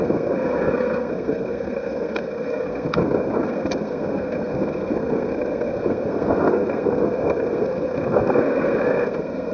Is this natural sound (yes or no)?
no